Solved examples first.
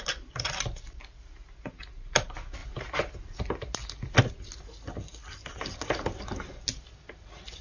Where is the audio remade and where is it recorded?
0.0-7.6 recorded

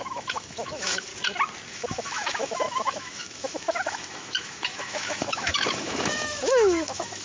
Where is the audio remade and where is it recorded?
0.0-1.1 remade; 1.1-1.7 recorded; 1.7-7.2 remade

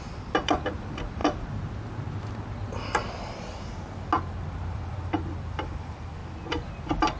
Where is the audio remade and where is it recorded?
0.0-1.2 remade; 1.2-4.2 recorded; 4.2-6.2 remade; 6.2-7.2 recorded

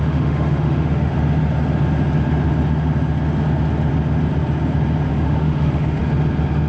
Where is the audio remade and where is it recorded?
0.0-1.1 remade; 1.1-5.1 recorded; 5.1-6.0 remade; 6.0-6.7 recorded

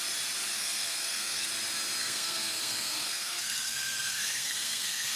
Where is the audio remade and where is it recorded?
0.0-0.5 recorded; 0.5-1.5 remade; 1.5-2.0 recorded; 2.0-5.2 remade

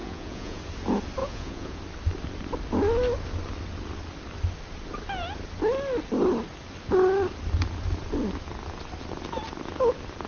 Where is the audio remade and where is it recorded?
0.0-0.6 remade; 0.6-1.2 recorded; 1.2-1.8 remade; 1.8-10.3 recorded

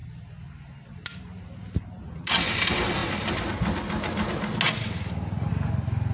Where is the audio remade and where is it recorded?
0.0-6.1 recorded

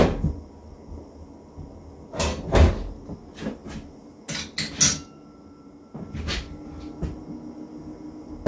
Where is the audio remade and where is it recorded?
0.0-8.5 recorded